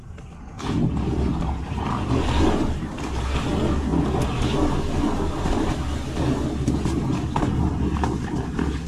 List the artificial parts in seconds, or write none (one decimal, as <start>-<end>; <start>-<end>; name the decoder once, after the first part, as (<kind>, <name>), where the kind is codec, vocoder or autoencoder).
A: none